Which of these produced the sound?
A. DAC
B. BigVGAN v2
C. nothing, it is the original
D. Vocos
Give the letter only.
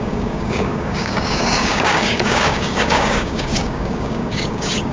A